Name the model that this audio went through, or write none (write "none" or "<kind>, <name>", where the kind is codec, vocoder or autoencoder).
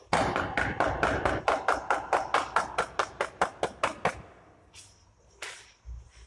none